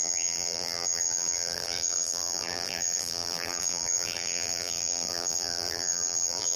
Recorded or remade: remade